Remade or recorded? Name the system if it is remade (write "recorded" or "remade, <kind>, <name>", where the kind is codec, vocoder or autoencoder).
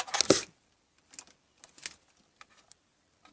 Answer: recorded